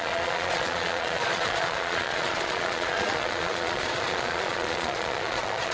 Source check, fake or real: fake